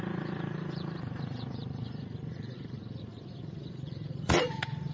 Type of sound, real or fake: fake